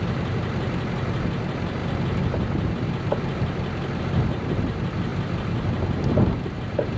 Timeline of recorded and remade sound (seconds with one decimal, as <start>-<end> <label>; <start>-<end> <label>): 0.0-7.0 recorded